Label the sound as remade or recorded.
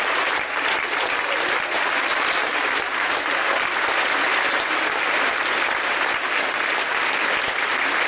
remade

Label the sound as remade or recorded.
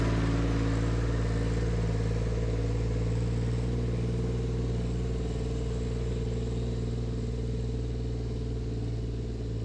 recorded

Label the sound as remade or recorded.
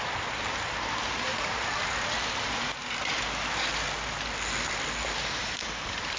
recorded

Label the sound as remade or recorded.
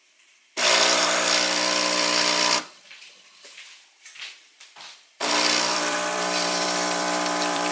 remade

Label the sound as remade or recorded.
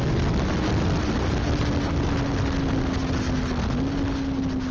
recorded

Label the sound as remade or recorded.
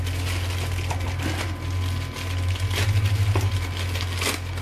recorded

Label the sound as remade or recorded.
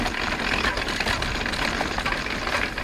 recorded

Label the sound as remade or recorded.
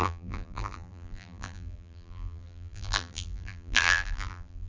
remade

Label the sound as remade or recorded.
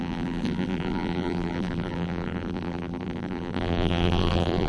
remade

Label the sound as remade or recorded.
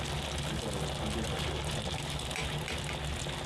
recorded